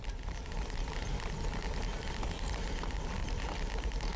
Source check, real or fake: real